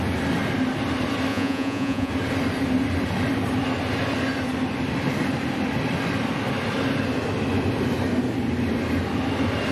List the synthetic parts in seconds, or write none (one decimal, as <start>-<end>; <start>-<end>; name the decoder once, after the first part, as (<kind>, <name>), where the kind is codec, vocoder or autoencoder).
1.3-2.1 (vocoder, Vocos)